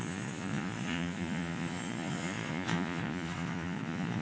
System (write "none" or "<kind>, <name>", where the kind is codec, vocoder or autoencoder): vocoder, Vocos